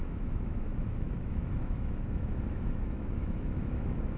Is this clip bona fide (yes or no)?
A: no